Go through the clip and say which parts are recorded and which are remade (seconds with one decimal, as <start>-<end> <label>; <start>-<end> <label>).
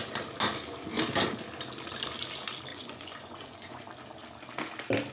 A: 0.0-2.7 recorded; 2.7-3.8 remade; 3.8-5.1 recorded